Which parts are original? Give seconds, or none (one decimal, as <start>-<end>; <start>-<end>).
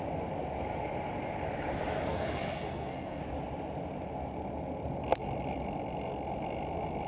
0.0-2.1; 3.2-7.1